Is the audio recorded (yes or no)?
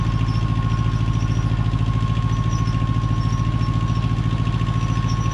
yes